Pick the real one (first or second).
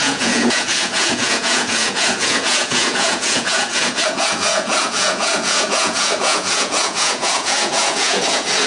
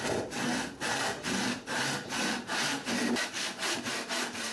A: second